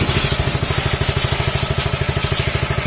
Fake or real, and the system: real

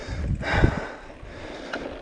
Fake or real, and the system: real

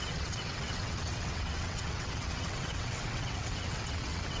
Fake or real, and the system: fake, vocoder, WaveNeXt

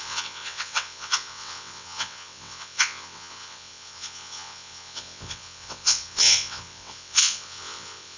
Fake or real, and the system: fake, vocoder, WaveNeXt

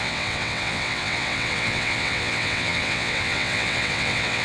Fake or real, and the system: fake, vocoder, WaveNeXt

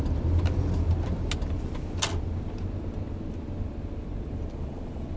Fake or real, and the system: real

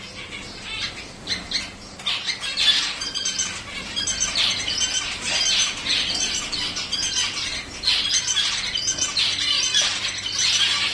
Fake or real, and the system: real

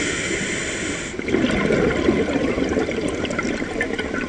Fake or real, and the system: real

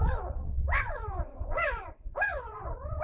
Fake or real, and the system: fake, vocoder, WaveNeXt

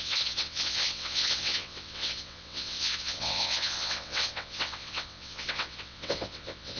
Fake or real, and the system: fake, vocoder, WaveNeXt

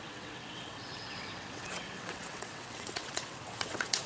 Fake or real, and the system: fake, vocoder, WaveNeXt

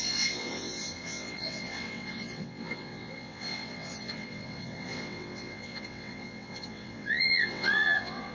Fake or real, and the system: fake, vocoder, WaveNeXt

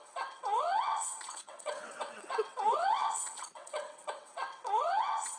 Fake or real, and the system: fake, vocoder, WaveNeXt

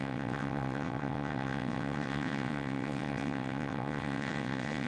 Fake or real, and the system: fake, vocoder, WaveNeXt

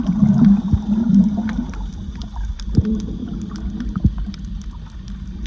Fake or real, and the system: real